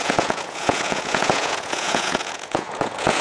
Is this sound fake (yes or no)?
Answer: yes